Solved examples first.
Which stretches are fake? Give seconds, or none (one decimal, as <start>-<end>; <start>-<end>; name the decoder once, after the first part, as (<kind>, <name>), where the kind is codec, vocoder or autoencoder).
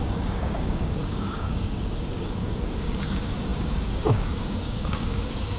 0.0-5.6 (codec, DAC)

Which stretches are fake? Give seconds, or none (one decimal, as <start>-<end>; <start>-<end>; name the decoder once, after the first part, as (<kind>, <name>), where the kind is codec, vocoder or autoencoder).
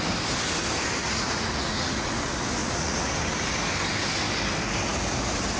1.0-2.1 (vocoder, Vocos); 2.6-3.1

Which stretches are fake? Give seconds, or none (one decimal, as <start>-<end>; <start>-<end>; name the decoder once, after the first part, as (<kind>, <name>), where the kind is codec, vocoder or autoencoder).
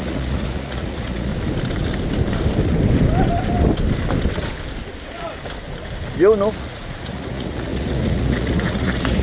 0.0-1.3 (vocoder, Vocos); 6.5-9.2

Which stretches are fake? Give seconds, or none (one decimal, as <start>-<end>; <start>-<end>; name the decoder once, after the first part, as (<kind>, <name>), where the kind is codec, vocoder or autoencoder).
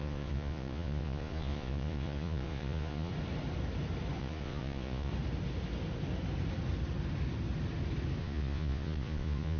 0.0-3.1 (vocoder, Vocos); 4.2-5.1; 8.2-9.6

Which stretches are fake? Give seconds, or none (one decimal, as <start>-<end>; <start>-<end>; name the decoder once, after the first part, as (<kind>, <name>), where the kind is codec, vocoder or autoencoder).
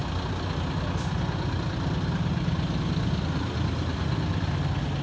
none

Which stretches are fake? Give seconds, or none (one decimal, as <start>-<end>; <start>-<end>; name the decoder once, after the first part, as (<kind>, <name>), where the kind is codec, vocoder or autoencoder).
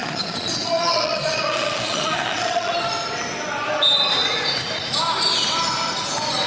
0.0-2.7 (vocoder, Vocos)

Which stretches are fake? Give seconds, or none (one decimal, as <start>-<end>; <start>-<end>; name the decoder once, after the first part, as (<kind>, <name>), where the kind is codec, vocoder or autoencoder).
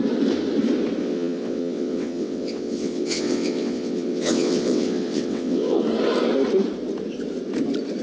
1.0-5.8 (vocoder, WaveNeXt)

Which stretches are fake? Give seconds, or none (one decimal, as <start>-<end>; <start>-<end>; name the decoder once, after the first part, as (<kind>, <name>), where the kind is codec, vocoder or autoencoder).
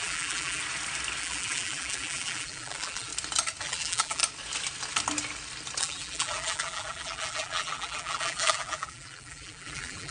0.0-0.6 (vocoder, BigVGAN v2); 1.2-3.1; 3.6-4.2; 5.8-10.1